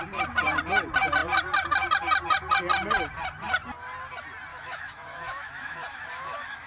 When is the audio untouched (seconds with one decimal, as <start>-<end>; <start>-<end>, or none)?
0.0-4.5